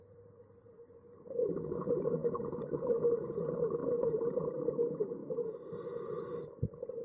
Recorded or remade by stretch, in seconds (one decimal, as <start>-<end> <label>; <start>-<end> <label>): 0.0-2.2 recorded; 2.2-3.0 remade; 3.0-3.8 recorded; 3.8-4.6 remade; 4.6-5.2 recorded; 5.2-7.0 remade

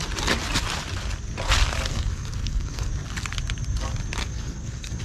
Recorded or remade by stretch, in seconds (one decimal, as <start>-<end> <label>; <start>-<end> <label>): 0.0-1.9 recorded; 1.9-2.9 remade; 2.9-4.2 recorded; 4.2-5.0 remade

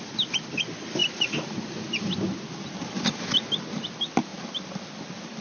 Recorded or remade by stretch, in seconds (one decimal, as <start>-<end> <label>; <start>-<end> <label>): 0.0-5.4 recorded

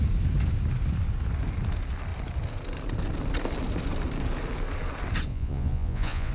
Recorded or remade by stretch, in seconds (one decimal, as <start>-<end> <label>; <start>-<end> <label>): 0.0-5.3 recorded; 5.3-6.3 remade

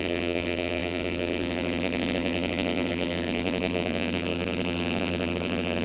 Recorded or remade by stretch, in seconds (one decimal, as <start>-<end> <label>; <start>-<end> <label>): 0.0-5.8 remade

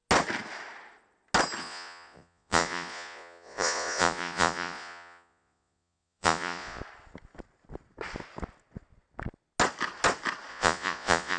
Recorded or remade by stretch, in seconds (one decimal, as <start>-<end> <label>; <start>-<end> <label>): 0.0-1.6 recorded; 1.6-6.8 remade; 6.8-10.5 recorded; 10.5-11.4 remade

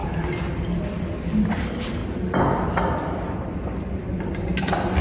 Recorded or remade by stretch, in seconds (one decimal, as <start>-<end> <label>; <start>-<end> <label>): 0.0-5.0 recorded